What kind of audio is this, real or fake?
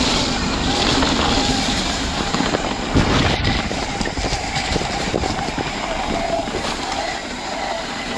real